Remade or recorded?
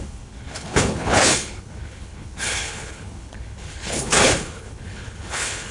remade